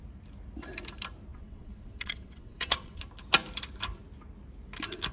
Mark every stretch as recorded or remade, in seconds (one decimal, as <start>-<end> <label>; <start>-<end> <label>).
0.0-1.3 recorded; 1.3-3.0 remade; 3.0-5.1 recorded

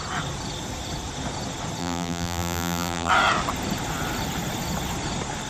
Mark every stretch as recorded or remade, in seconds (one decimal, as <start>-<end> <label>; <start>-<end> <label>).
0.0-1.8 recorded; 1.8-3.1 remade; 3.1-5.5 recorded

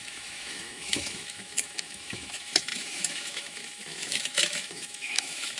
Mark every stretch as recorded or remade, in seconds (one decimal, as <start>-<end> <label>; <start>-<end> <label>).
0.0-5.6 remade

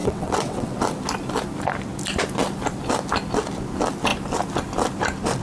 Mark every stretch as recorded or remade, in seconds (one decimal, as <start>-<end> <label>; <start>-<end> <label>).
0.0-0.7 remade; 0.7-5.4 recorded

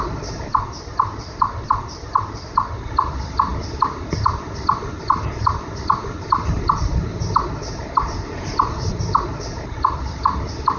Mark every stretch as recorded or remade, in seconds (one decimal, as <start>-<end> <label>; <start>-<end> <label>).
0.0-10.8 recorded